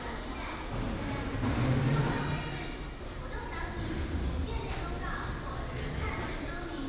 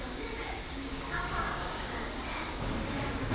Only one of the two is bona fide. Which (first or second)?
first